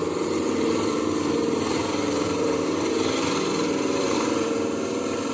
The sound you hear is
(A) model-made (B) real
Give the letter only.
A